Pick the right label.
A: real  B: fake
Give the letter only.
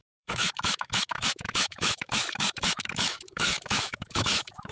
B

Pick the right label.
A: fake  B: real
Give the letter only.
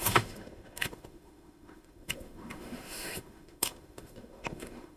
A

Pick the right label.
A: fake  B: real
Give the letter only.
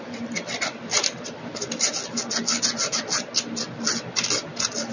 B